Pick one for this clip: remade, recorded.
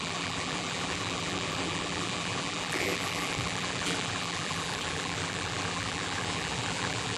remade